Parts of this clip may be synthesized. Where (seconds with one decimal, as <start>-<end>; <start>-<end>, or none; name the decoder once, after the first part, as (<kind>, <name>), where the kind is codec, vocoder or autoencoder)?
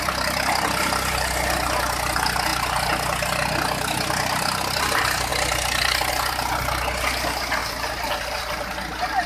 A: 7.6-8.4 (vocoder, BigVGAN v2)